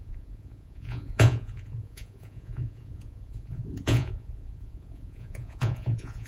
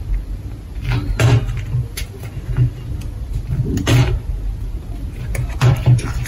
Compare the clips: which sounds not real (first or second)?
first